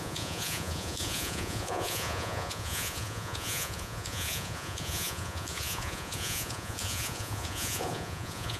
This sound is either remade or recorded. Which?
remade